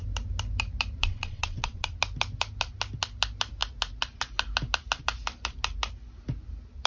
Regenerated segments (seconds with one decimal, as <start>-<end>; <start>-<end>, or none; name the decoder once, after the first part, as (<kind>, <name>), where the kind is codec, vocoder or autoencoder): 1.0-1.9 (vocoder, WaveNeXt)